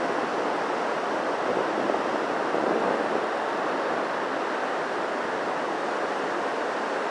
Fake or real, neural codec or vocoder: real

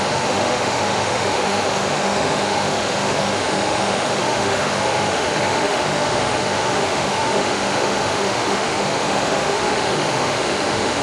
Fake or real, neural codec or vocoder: fake, autoencoder, DAC-VAE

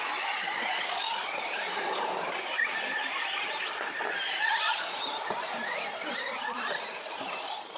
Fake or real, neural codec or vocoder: real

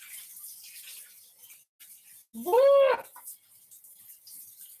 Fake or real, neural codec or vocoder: real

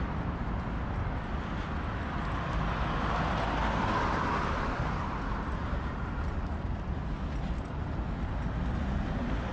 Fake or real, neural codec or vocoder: real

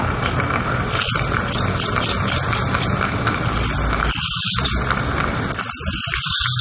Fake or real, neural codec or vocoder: real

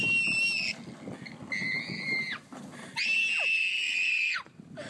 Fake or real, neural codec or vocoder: real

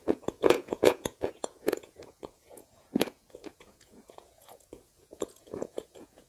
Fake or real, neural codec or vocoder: fake, vocoder, Vocos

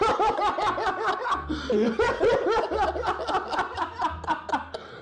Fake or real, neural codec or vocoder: real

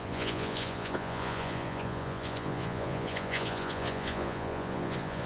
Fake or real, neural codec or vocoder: fake, vocoder, Vocos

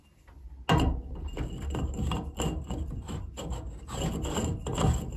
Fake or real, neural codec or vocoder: real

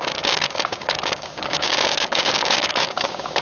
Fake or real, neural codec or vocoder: fake, codec, DAC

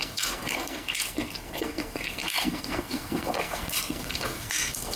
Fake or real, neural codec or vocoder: fake, codec, SNAC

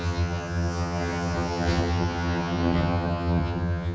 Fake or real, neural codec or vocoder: fake, vocoder, HiFi-GAN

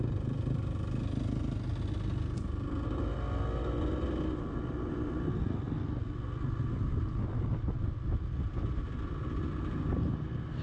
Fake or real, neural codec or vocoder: real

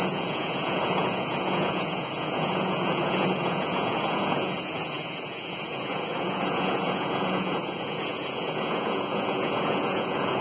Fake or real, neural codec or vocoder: fake, vocoder, Vocos